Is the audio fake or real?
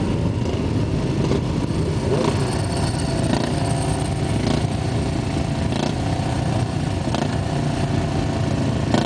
real